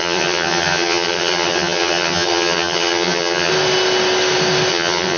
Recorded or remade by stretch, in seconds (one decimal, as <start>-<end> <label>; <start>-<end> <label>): 0.0-3.5 remade; 3.5-4.7 recorded; 4.7-5.2 remade